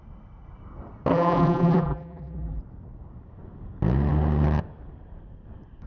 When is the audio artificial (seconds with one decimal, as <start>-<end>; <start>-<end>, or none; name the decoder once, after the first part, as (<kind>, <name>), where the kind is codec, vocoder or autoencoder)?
1.1-2.6 (vocoder, BigVGAN v2)